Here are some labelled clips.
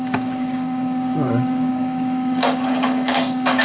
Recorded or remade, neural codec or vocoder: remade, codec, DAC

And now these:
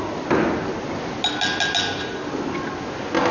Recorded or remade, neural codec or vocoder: recorded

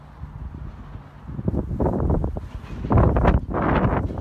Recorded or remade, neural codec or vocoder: recorded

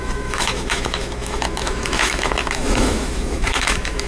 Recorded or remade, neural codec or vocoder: remade, autoencoder, DAC-VAE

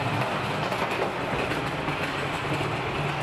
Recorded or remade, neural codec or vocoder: recorded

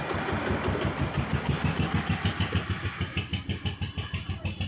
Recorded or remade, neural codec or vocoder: recorded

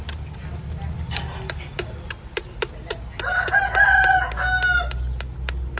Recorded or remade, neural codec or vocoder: recorded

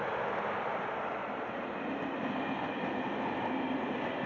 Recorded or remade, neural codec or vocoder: recorded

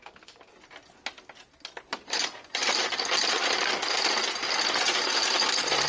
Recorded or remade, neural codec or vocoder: recorded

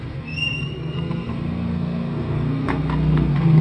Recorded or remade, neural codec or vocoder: remade, codec, SNAC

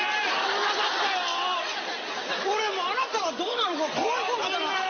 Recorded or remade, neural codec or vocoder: recorded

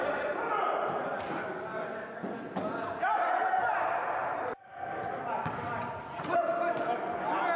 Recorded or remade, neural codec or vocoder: recorded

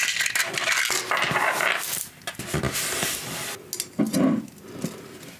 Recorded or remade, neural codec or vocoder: recorded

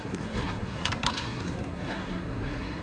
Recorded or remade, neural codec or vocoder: remade, codec, SNAC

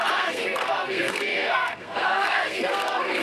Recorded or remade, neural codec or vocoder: remade, codec, SNAC